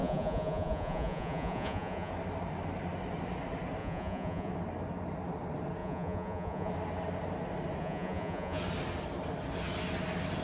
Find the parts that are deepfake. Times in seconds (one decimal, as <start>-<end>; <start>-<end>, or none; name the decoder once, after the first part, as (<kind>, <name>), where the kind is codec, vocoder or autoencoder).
0.0-2.1 (vocoder, Vocos); 3.8-4.5; 5.8-6.7; 7.8-8.6